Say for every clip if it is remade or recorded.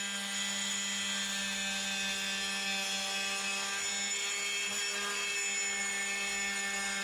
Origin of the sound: recorded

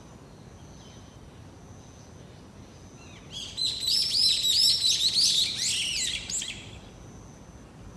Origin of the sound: recorded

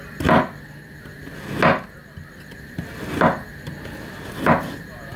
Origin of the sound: recorded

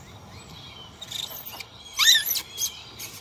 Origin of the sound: remade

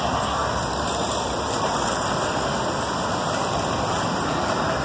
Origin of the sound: recorded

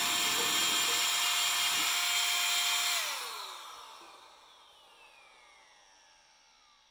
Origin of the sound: recorded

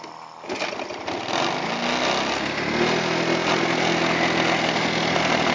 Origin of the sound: recorded